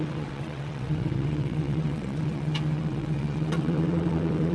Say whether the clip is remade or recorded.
remade